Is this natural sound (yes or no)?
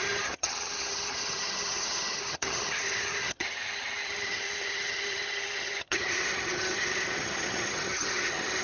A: no